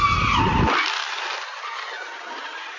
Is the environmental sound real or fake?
real